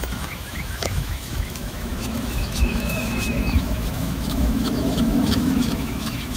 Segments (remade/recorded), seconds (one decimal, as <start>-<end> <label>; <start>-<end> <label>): 0.0-6.4 remade